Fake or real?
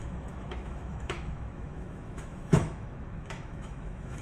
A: fake